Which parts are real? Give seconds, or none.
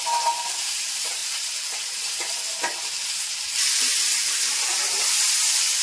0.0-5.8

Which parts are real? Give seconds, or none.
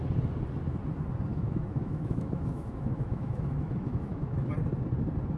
0.0-1.3; 4.5-5.4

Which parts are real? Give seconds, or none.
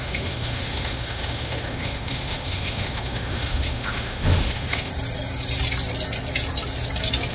4.9-7.3